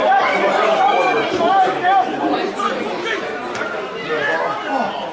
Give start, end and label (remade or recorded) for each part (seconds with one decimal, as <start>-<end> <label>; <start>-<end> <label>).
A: 0.0-2.6 remade; 2.6-5.1 recorded